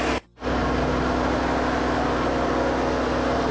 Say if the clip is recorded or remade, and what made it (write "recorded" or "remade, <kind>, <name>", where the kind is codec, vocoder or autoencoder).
recorded